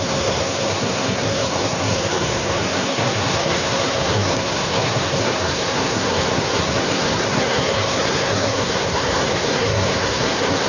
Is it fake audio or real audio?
fake